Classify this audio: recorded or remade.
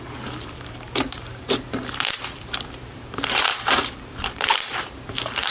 remade